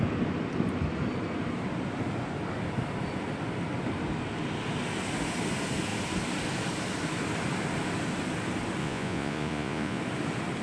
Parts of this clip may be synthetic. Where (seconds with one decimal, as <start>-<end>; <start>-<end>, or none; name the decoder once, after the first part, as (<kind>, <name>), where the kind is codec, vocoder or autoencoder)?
8.8-10.0 (vocoder, Vocos)